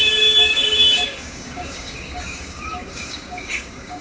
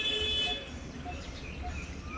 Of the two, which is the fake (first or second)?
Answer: first